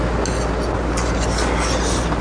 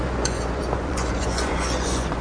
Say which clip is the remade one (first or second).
second